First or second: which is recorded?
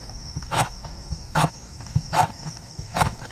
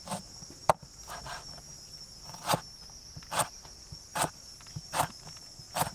second